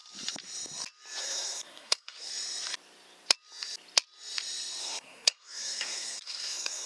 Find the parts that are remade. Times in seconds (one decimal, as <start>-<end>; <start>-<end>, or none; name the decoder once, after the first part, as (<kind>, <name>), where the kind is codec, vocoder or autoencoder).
1.2-2.3 (codec, SNAC); 4.8-6.9